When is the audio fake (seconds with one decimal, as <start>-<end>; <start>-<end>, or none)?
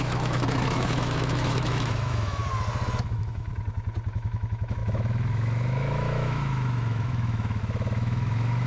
0.0-2.4; 3.0-3.5; 4.1-8.7